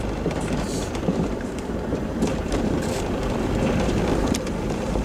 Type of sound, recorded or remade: remade